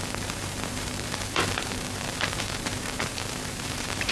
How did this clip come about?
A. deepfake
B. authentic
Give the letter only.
A